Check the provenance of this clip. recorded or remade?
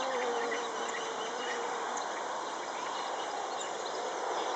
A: recorded